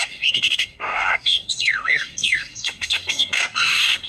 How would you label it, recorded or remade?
remade